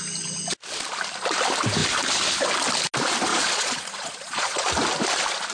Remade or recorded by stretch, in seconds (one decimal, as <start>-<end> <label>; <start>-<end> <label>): 0.0-3.3 recorded; 3.3-4.6 remade; 4.6-5.5 recorded